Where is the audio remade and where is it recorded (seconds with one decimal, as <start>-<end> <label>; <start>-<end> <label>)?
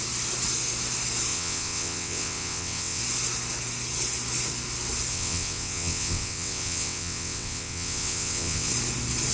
0.0-1.3 recorded; 1.3-3.0 remade; 3.0-5.1 recorded; 5.1-8.7 remade; 8.7-9.3 recorded